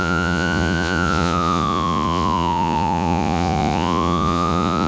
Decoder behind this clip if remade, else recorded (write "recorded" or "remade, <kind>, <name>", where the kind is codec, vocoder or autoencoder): remade, vocoder, Vocos